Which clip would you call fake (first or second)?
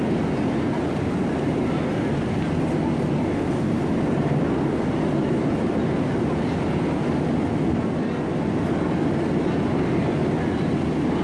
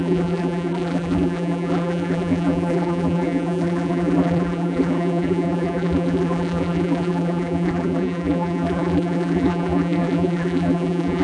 second